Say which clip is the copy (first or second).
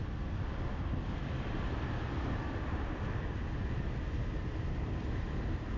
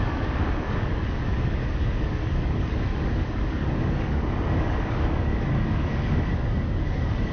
second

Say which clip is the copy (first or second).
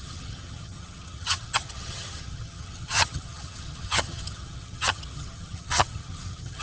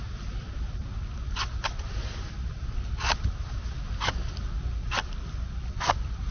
first